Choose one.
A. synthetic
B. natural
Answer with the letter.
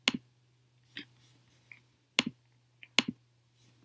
B